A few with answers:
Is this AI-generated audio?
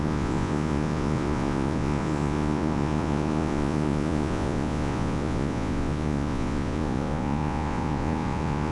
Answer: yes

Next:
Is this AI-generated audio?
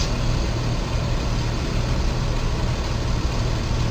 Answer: no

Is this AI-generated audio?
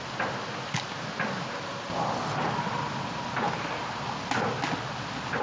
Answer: no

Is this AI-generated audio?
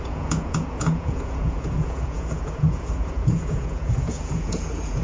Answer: yes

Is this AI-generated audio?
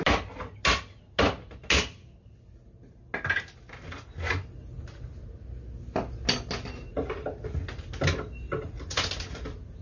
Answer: no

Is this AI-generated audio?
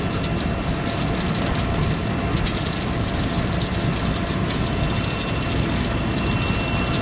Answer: no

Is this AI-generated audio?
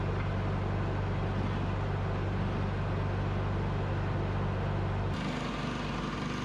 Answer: no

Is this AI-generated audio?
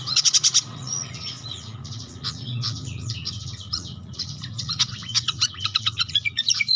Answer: yes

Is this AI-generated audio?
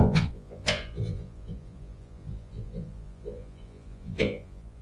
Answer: yes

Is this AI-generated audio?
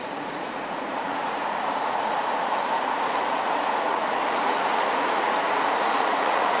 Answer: yes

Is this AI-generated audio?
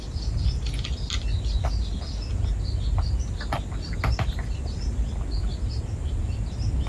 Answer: no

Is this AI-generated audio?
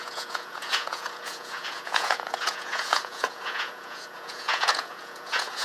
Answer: yes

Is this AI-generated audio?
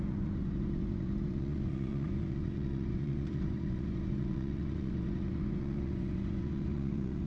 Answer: yes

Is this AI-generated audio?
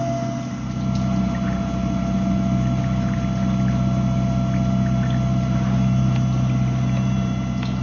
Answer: no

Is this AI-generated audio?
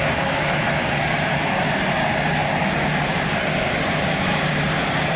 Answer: no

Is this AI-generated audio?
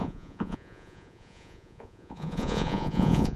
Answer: yes